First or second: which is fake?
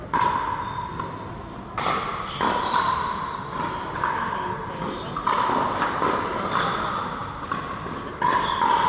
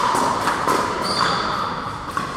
second